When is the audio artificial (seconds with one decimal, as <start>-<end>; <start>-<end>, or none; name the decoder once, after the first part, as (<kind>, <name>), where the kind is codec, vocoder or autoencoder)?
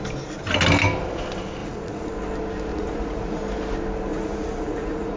1.6-2.1 (vocoder, Vocos); 2.7-3.4; 4.1-5.2